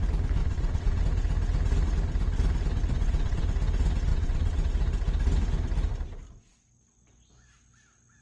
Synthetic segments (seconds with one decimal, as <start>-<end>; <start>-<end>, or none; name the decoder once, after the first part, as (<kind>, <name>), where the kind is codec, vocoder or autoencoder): 0.4-1.0 (vocoder, WaveNeXt); 2.9-3.4; 4.1-4.7

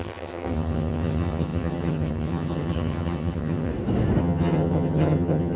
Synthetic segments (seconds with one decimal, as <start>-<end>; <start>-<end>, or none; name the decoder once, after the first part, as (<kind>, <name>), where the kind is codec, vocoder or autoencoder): 0.0-3.7 (vocoder, HiFi-GAN); 4.2-5.6